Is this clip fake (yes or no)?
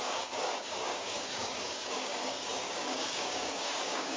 yes